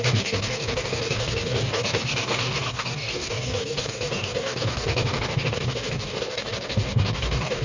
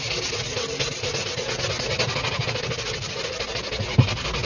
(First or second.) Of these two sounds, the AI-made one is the first